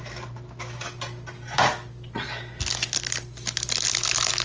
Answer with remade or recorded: recorded